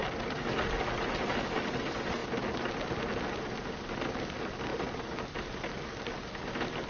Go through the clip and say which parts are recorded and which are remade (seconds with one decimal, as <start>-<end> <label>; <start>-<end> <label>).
0.0-6.9 recorded